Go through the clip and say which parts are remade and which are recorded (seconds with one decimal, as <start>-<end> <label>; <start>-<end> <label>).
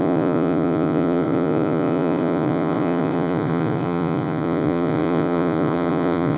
0.0-6.4 remade